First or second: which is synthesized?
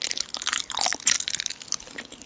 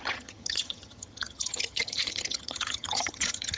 second